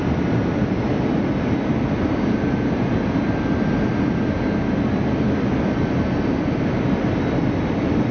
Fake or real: real